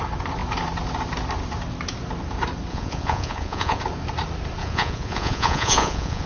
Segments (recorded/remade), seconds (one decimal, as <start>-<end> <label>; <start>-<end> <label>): 0.0-2.7 recorded; 2.7-3.8 remade; 3.8-4.6 recorded; 4.6-6.3 remade